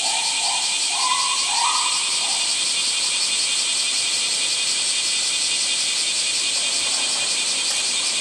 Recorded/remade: recorded